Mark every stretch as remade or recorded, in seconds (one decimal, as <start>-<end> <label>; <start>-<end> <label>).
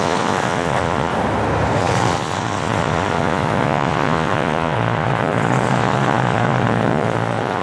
0.0-1.1 remade; 1.1-1.8 recorded; 1.8-7.6 remade